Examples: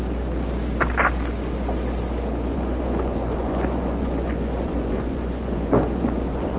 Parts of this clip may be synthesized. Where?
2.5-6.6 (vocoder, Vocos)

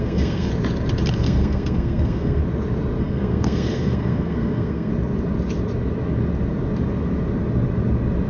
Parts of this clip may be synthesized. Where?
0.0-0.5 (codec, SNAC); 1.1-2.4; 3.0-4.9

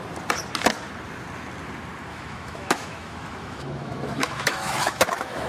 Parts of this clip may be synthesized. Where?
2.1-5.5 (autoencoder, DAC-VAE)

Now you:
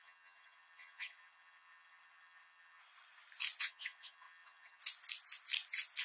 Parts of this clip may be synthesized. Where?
0.0-2.8 (vocoder, HiFi-GAN); 3.6-4.8